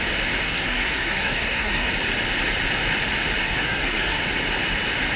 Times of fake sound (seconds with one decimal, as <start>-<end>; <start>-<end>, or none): 0.4-1.9; 3.4-4.2